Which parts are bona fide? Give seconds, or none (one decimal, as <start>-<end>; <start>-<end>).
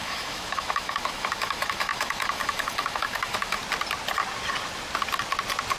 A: 3.6-5.8